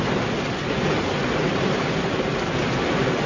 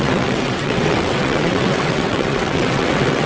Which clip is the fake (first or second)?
second